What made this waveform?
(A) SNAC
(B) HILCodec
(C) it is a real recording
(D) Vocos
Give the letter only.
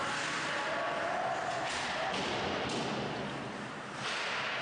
C